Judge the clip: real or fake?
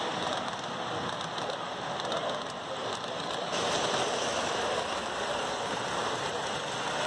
real